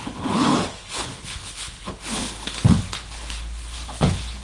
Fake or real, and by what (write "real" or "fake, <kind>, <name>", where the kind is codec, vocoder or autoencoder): fake, codec, HILCodec